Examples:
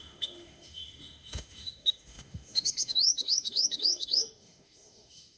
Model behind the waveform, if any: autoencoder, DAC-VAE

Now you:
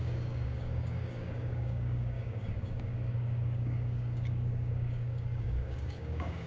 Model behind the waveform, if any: codec, DAC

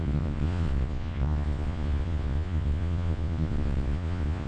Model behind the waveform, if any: vocoder, Vocos